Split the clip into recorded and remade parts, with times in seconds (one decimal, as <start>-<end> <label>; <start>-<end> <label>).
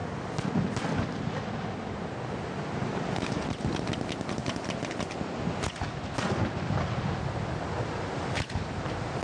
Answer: 0.0-9.2 recorded